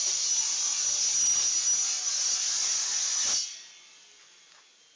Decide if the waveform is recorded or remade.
recorded